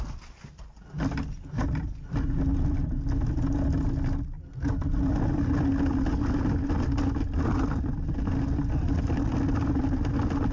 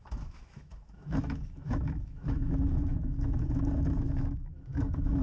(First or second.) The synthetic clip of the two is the second